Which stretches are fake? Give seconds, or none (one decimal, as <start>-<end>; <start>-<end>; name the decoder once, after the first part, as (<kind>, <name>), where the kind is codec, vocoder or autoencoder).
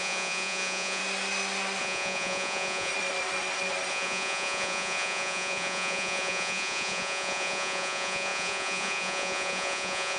0.0-1.0 (vocoder, Vocos); 1.8-2.9; 3.9-10.2